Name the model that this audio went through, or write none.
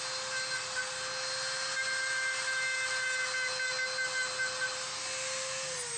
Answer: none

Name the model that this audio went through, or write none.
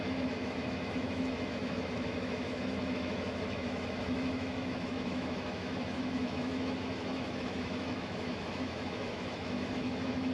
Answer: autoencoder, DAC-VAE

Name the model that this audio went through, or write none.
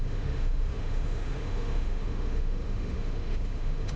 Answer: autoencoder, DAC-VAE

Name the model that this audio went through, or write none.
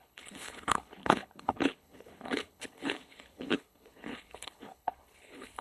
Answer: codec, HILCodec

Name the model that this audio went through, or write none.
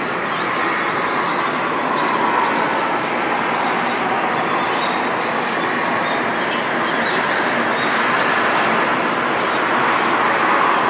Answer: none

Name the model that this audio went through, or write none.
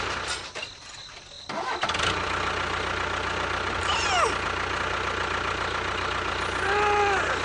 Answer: none